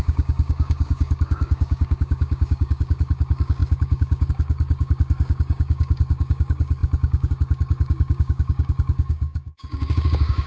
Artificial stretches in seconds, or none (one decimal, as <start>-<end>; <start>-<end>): 0.0-10.5